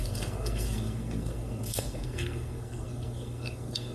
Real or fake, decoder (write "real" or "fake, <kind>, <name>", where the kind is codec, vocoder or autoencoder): fake, codec, SNAC